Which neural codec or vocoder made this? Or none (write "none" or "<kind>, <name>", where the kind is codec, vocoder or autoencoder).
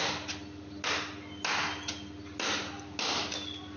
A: none